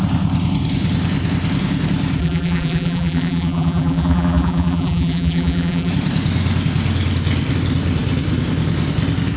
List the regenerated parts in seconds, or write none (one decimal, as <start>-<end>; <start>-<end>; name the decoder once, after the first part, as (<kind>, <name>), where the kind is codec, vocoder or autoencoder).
2.2-5.9 (vocoder, BigVGAN v2)